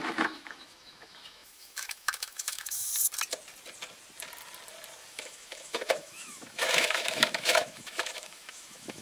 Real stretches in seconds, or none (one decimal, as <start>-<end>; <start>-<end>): 2.9-5.1